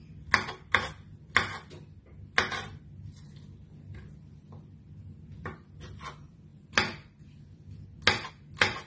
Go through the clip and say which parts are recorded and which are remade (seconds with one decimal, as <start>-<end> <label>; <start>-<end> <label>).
0.0-8.9 recorded